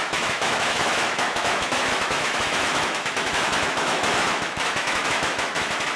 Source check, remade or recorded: remade